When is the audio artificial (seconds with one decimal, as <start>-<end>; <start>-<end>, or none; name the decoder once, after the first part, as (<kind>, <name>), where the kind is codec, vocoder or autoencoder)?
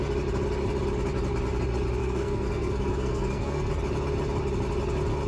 2.0-3.7 (codec, SNAC)